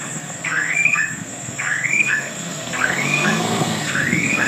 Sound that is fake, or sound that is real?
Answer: fake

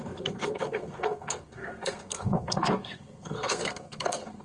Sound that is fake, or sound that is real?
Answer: fake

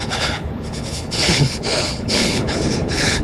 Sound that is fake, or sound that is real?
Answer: fake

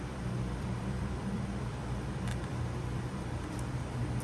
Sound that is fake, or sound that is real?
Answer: fake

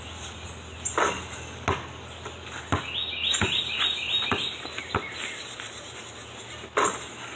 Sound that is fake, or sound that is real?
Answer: real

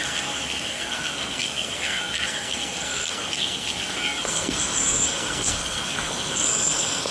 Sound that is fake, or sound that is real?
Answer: fake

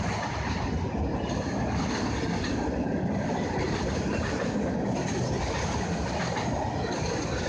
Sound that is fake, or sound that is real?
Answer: real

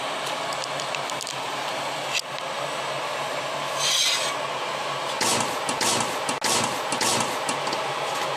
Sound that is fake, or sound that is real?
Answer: real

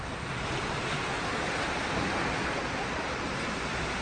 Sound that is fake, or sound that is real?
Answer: real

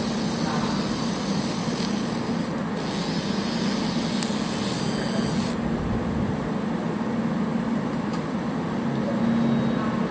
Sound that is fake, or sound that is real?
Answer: real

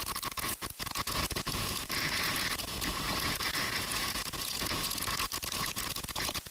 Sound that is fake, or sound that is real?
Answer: fake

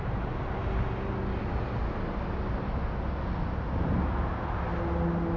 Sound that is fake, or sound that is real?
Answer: real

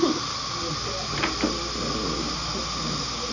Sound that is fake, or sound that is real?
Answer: real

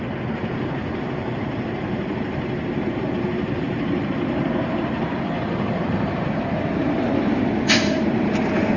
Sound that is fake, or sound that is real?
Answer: fake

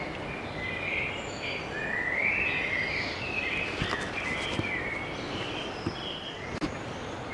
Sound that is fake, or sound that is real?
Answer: real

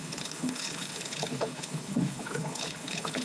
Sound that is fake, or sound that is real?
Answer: fake